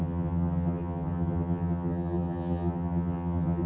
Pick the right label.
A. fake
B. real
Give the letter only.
A